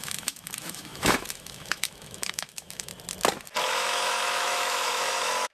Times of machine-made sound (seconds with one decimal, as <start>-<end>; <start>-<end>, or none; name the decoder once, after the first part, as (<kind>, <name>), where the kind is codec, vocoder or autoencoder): 0.0-2.9 (autoencoder, DAC-VAE); 3.6-5.5

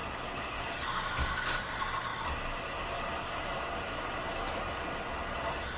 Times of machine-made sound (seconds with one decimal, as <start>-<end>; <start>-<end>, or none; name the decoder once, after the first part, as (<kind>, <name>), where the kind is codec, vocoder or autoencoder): 0.0-5.8 (vocoder, BigVGAN v2)

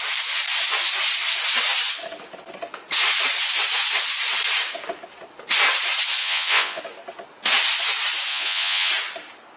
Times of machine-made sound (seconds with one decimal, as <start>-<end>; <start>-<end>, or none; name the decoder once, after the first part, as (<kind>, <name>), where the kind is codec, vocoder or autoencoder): 6.2-6.8 (vocoder, Vocos); 8.3-8.9

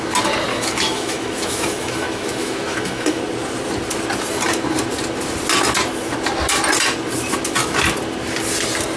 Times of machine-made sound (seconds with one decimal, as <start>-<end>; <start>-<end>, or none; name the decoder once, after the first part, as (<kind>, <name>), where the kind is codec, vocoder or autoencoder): 0.5-3.2 (autoencoder, DAC-VAE)

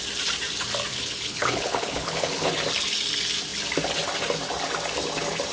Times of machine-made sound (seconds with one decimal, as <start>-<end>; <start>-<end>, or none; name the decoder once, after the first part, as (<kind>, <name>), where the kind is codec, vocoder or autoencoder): 0.9-2.5 (codec, HILCodec)

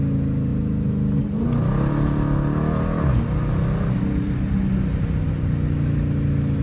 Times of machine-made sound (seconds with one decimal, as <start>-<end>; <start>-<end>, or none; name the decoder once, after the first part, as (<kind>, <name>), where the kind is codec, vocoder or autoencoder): none

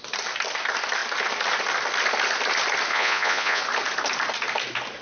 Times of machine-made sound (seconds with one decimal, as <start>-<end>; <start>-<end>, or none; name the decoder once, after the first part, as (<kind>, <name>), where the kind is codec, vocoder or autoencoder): 2.9-3.6 (vocoder, Vocos)